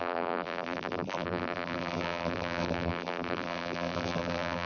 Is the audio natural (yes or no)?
no